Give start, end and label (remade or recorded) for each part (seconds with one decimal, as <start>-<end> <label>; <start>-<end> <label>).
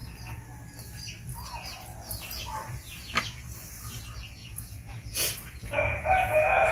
0.0-4.4 recorded; 4.4-6.7 remade